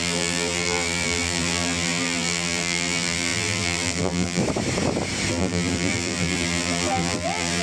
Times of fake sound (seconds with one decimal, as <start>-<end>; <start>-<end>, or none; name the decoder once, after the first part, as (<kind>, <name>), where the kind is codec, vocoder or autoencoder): 0.0-4.4 (vocoder, BigVGAN v2); 5.3-7.6